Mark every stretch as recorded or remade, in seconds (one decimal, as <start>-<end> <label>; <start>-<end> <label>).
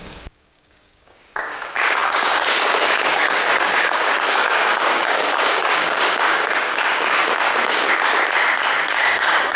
0.0-7.9 remade; 7.9-8.9 recorded; 8.9-9.6 remade